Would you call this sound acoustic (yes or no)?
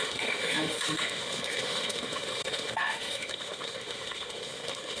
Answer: no